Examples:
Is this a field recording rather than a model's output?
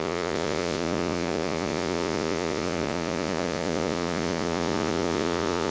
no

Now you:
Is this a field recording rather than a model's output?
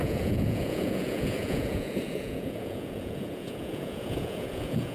no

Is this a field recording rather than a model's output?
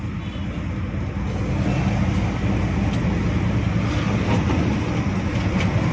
yes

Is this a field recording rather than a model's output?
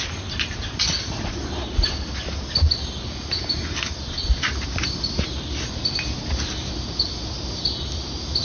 yes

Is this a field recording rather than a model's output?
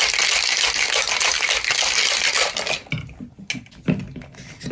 yes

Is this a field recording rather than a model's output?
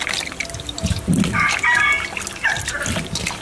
yes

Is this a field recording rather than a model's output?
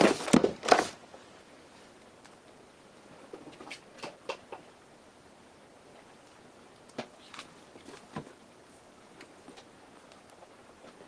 yes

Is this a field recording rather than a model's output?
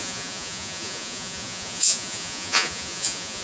no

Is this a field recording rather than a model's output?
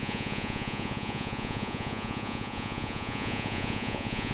no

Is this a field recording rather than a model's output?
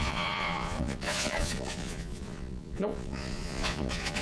no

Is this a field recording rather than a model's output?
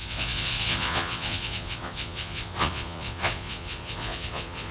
no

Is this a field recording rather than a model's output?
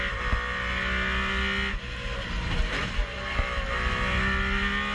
yes